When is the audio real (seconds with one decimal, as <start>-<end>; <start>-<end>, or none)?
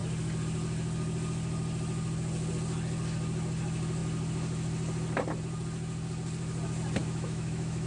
0.0-7.0